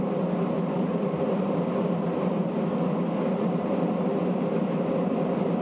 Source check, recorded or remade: recorded